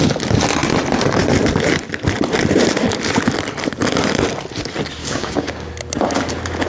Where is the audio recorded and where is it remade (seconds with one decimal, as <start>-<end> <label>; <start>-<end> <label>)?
0.0-5.0 recorded; 5.0-5.7 remade; 5.7-6.7 recorded